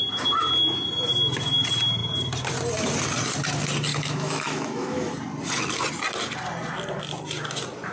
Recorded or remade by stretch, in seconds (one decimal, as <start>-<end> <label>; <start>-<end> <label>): 0.0-3.9 recorded; 3.9-5.1 remade; 5.1-7.9 recorded